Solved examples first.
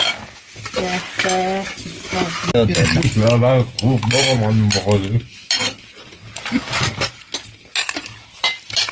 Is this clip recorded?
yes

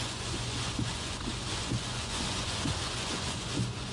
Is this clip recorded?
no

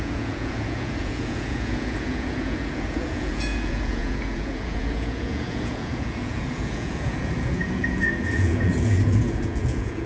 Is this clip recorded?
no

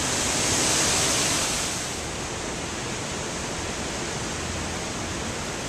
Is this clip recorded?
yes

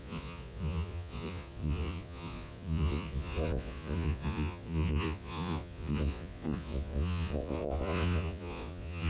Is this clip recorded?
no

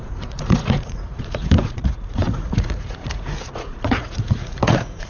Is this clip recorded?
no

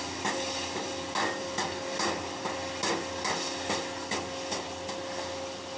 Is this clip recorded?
yes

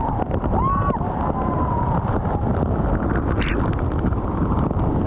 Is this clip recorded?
yes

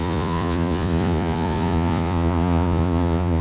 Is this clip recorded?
no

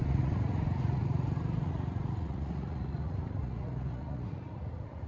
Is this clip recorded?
no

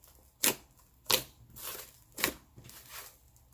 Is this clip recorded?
yes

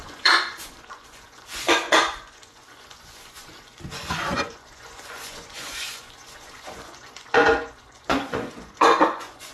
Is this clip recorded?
no